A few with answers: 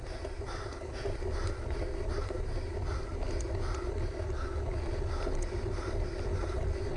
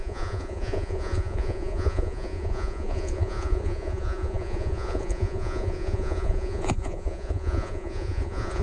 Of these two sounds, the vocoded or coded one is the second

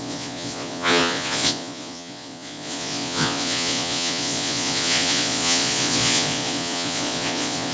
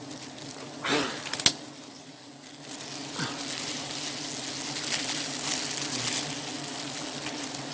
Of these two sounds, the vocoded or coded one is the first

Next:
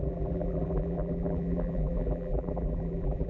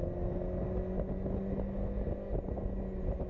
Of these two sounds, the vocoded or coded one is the first